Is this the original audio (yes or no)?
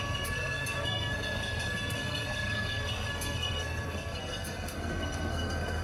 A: no